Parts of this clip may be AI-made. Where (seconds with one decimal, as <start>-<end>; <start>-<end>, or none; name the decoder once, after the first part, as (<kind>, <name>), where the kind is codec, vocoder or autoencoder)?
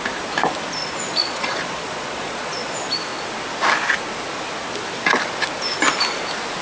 0.8-2.7 (vocoder, Vocos)